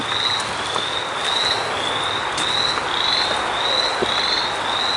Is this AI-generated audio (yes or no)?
no